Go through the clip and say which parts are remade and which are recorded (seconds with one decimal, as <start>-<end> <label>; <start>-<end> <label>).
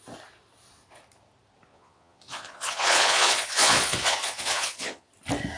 0.0-1.7 recorded; 1.7-5.1 remade; 5.1-5.6 recorded